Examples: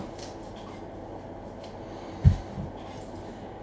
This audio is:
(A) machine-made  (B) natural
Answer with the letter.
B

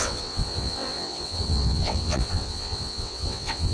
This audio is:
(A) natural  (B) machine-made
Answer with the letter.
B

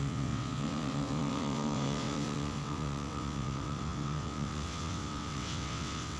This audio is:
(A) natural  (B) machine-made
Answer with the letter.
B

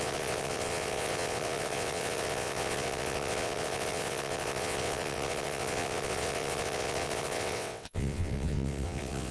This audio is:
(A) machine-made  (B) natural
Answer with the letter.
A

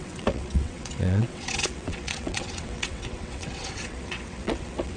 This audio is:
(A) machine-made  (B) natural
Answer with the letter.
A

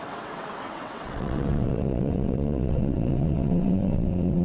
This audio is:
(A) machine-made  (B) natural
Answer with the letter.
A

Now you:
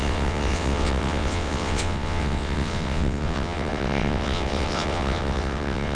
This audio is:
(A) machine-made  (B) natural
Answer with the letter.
A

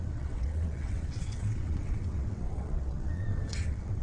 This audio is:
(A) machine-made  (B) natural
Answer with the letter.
A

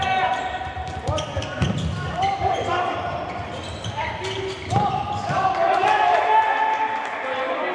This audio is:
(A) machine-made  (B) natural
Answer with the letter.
B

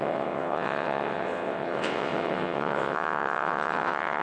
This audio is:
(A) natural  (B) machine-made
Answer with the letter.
B